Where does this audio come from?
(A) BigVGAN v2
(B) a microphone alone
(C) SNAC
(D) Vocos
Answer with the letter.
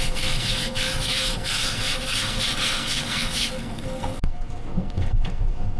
C